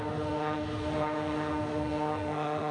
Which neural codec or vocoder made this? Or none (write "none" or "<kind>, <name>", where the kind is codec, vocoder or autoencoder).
autoencoder, DAC-VAE